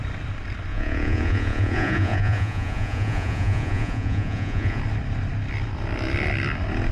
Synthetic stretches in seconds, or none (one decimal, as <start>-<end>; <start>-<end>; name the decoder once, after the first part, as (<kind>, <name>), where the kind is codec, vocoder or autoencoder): 0.7-4.8 (vocoder, Vocos)